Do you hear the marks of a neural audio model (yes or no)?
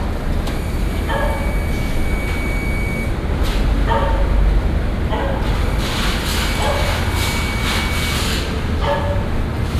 no